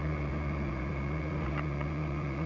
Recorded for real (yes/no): no